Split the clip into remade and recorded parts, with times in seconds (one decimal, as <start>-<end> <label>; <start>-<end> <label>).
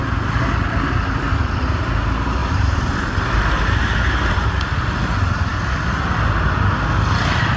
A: 0.0-2.4 recorded; 2.4-4.3 remade; 4.3-7.6 recorded